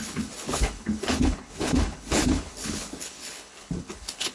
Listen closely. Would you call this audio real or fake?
fake